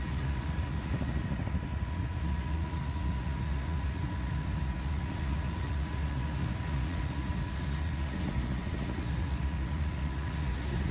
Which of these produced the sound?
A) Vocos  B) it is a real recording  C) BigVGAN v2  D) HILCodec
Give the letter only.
A